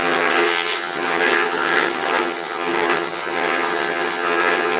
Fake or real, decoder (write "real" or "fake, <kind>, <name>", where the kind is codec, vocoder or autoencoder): fake, vocoder, HiFi-GAN